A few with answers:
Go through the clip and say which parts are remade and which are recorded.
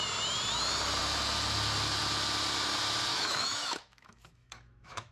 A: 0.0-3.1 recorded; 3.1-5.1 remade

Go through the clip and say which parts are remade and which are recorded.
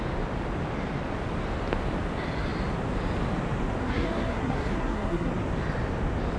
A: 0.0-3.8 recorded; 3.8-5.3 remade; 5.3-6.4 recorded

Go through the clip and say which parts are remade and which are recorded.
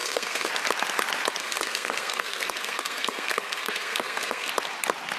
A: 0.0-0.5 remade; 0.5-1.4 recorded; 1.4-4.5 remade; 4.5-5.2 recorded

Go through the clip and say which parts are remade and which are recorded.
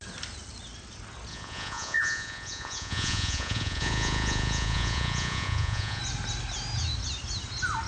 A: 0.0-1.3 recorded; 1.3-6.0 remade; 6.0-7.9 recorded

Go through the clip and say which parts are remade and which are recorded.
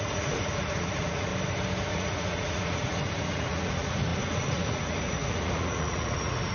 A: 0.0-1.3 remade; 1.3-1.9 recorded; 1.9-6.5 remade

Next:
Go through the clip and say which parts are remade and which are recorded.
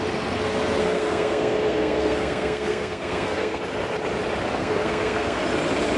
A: 0.0-0.8 recorded; 0.8-3.6 remade; 3.6-4.6 recorded; 4.6-5.4 remade; 5.4-6.0 recorded